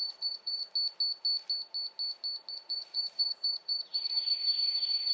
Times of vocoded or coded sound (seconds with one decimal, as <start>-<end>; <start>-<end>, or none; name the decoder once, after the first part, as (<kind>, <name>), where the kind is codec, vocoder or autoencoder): 0.0-0.6 (vocoder, BigVGAN v2); 2.5-5.1